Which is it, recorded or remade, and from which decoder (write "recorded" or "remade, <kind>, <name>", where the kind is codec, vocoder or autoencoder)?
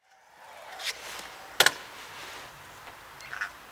recorded